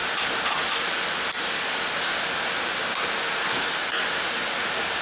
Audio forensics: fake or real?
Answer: real